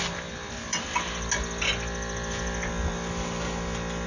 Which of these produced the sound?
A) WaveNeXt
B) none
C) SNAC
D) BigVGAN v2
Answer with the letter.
B